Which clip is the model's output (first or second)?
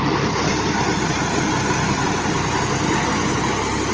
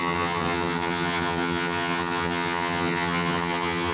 second